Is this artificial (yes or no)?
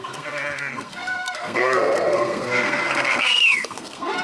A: yes